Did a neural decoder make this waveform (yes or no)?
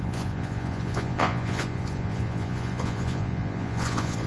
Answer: yes